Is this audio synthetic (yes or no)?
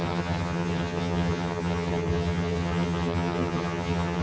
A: yes